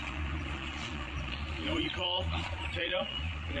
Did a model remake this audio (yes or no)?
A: yes